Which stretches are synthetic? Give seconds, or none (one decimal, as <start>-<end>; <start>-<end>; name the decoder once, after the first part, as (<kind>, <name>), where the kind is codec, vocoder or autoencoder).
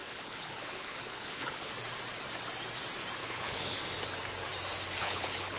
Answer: 0.0-1.7 (codec, HILCodec); 3.2-3.8; 5.0-5.6